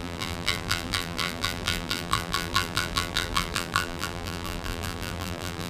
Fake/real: fake